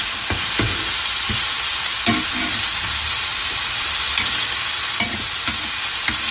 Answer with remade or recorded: recorded